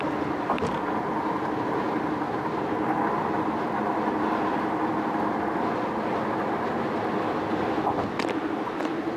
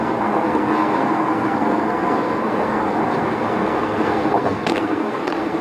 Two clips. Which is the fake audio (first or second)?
second